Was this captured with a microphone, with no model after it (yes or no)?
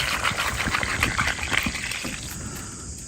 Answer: yes